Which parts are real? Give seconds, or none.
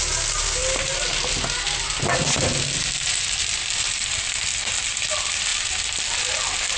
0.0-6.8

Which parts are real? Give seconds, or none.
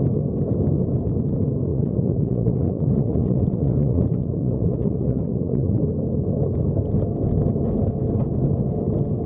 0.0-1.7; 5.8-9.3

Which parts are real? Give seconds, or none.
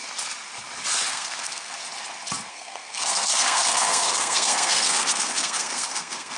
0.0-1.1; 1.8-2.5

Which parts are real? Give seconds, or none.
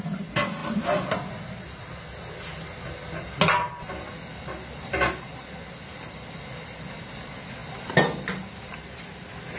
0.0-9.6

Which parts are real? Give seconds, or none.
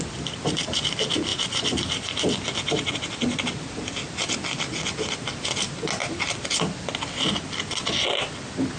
0.0-1.3; 2.9-6.0; 6.5-8.8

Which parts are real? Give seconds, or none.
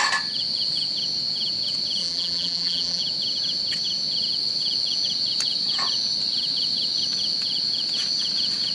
0.0-2.0; 3.0-8.7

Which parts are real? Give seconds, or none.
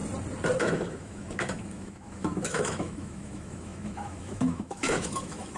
0.0-0.6